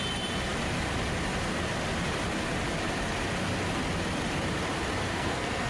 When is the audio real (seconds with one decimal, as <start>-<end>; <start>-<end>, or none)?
0.0-5.1